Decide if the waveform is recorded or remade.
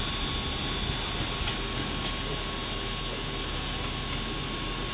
recorded